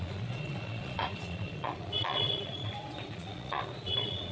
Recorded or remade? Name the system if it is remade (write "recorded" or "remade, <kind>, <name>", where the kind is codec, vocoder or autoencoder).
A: remade, vocoder, Vocos